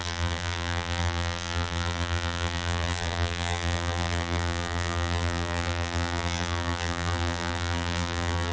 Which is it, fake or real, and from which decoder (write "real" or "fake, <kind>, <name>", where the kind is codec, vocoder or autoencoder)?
fake, vocoder, BigVGAN v2